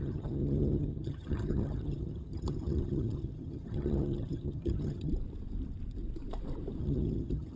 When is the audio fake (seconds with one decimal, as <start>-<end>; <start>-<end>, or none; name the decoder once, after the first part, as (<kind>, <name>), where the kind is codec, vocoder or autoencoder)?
0.0-5.1 (vocoder, HiFi-GAN); 6.8-7.6

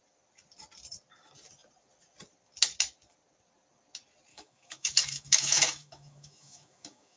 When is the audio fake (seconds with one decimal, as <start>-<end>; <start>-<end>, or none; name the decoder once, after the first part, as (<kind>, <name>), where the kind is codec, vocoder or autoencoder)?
4.3-7.2 (autoencoder, DAC-VAE)

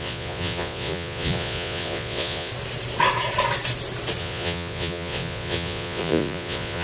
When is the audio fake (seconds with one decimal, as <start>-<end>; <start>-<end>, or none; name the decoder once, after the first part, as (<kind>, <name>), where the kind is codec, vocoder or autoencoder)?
0.0-2.5 (vocoder, Vocos); 4.2-6.8

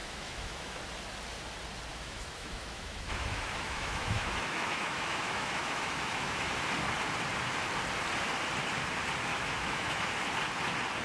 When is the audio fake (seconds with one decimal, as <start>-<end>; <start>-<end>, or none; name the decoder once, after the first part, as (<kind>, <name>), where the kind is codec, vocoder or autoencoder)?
0.0-0.8 (autoencoder, DAC-VAE); 1.9-6.5; 9.3-10.0